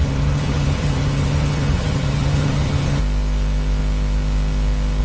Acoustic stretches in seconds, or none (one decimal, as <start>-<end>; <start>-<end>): 3.0-5.0